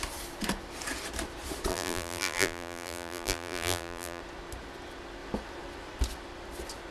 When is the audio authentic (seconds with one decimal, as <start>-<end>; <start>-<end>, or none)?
0.0-1.7; 4.2-6.9